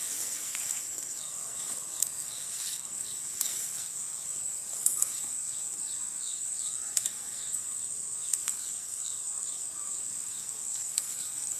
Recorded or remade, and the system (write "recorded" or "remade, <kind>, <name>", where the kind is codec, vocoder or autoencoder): remade, codec, SNAC